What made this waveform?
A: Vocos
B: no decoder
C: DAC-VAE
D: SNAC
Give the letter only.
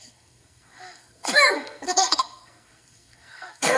D